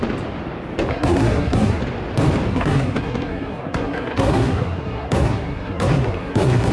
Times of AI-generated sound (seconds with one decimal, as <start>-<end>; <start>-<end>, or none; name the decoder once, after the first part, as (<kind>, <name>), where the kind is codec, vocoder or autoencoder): 0.9-1.8 (codec, SNAC); 2.5-6.7